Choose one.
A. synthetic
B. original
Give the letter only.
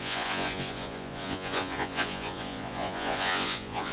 A